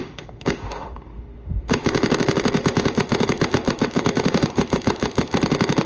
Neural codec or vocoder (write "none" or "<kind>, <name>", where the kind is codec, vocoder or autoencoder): autoencoder, DAC-VAE